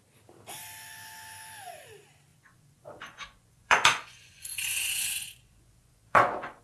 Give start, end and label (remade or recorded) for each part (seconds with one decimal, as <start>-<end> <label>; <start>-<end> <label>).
0.0-2.3 recorded; 2.3-6.6 remade